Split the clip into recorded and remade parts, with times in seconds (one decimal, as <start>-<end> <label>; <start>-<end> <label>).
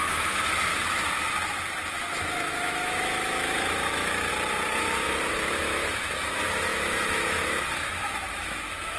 0.0-0.7 remade; 0.7-1.9 recorded; 1.9-4.3 remade; 4.3-5.3 recorded; 5.3-9.0 remade